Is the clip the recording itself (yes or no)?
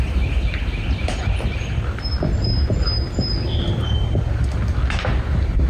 yes